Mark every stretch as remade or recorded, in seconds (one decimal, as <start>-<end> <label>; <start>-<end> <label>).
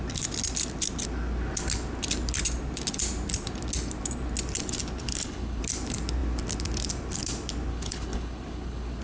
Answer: 0.0-5.0 recorded; 5.0-5.6 remade; 5.6-7.7 recorded; 7.7-9.0 remade